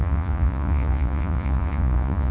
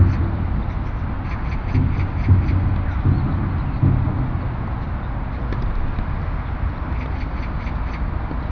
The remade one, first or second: first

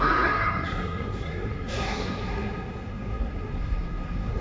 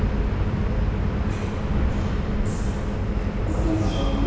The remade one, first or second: first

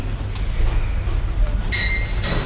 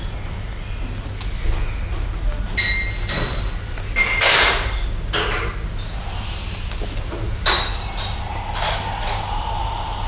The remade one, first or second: first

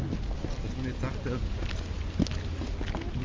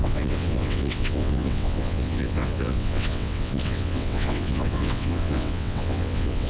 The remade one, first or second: second